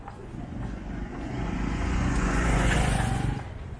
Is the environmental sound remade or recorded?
remade